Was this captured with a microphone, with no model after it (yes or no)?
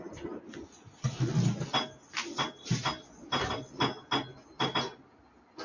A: yes